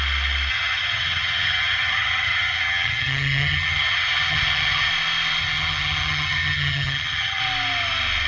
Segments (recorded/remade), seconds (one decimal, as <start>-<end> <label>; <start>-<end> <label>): 0.0-0.5 recorded; 0.5-4.9 remade; 4.9-5.4 recorded; 5.4-7.4 remade; 7.4-8.3 recorded